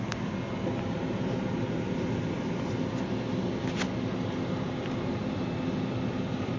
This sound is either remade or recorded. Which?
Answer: recorded